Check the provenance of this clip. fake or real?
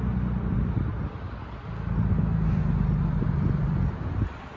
real